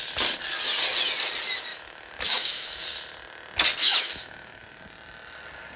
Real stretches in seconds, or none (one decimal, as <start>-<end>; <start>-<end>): 0.0-1.7; 2.8-3.8; 4.6-5.8